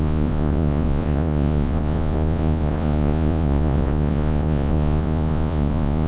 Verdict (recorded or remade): remade